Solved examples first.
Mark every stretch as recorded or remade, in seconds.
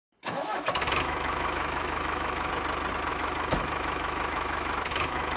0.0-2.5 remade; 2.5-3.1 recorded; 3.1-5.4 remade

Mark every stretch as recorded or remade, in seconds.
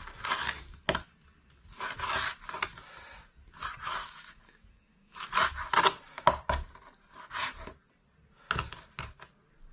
0.0-4.0 recorded; 4.0-5.3 remade; 5.3-9.7 recorded